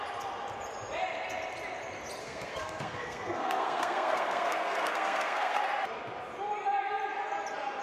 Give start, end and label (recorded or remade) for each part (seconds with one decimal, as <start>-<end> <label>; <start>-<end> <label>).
0.0-2.2 recorded; 2.2-5.6 remade; 5.6-7.8 recorded